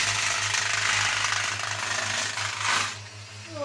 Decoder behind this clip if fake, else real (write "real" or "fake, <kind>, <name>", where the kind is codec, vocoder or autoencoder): real